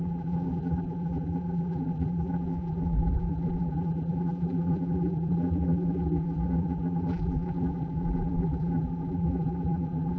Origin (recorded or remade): remade